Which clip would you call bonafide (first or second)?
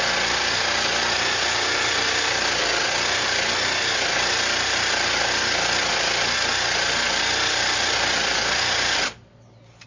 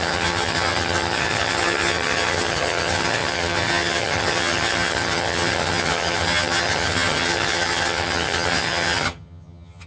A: first